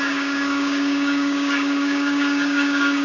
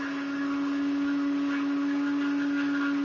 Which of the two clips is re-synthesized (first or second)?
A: first